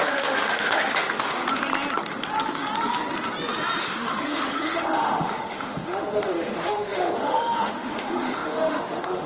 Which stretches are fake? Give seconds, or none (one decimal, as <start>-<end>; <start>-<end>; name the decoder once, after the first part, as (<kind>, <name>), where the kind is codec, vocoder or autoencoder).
0.0-1.4 (autoencoder, DAC-VAE); 3.8-9.3